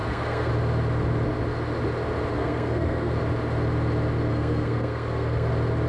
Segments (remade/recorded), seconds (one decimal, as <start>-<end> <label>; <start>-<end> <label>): 0.0-0.5 remade; 0.5-2.3 recorded; 2.3-3.1 remade; 3.1-4.3 recorded; 4.3-5.5 remade; 5.5-5.9 recorded

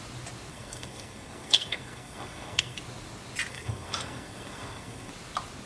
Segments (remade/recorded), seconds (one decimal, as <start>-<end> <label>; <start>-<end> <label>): 0.0-0.5 recorded; 0.5-2.8 remade; 2.8-3.5 recorded; 3.5-5.1 remade; 5.1-5.7 recorded

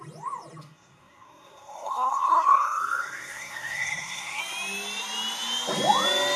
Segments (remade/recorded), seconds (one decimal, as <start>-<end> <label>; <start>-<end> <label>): 0.0-0.6 recorded; 0.6-4.4 remade; 4.4-6.4 recorded

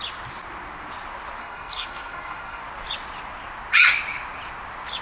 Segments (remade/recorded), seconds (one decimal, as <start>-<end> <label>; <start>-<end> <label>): 0.0-1.4 recorded; 1.4-2.6 remade; 2.6-5.0 recorded

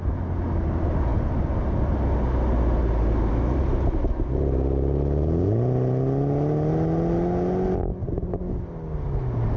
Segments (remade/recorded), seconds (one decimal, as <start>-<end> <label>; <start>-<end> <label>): 0.0-9.6 recorded

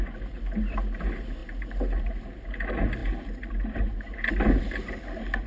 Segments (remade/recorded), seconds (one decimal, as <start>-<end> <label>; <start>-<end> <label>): 0.0-5.5 recorded